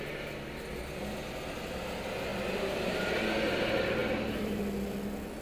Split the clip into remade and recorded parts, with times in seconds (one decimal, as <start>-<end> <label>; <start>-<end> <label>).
0.0-4.0 recorded; 4.0-4.6 remade; 4.6-5.4 recorded

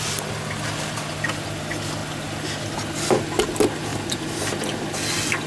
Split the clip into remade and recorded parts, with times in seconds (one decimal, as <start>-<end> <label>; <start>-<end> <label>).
0.0-3.9 recorded; 3.9-4.8 remade; 4.8-5.5 recorded

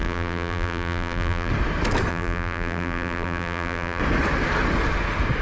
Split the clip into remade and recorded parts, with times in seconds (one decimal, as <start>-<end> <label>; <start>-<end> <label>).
0.0-1.5 remade; 1.5-2.1 recorded; 2.1-4.0 remade; 4.0-5.4 recorded